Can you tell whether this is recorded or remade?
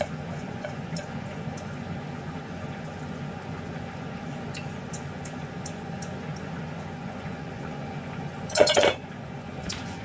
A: remade